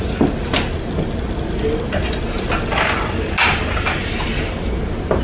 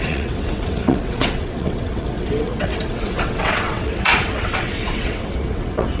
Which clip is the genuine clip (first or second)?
first